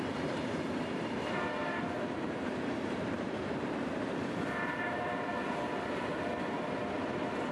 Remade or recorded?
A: remade